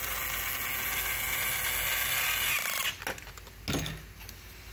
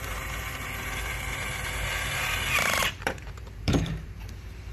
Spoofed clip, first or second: second